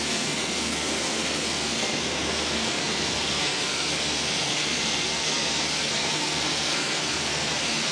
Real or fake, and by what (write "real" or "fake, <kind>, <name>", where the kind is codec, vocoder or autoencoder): fake, codec, SNAC